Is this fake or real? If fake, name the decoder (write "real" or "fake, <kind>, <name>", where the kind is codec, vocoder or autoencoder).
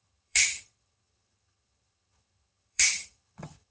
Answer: fake, vocoder, HiFi-GAN